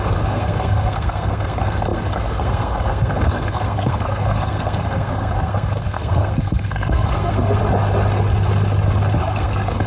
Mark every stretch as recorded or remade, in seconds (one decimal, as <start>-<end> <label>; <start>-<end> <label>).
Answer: 0.0-7.6 remade; 7.6-9.2 recorded; 9.2-9.9 remade